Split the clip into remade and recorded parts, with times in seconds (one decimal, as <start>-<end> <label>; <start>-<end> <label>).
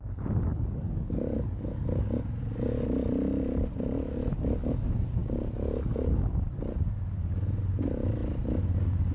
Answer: 0.0-0.5 recorded; 0.5-2.0 remade; 2.0-9.1 recorded